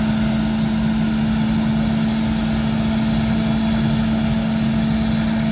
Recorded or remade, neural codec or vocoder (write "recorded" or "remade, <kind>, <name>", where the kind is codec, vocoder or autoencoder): recorded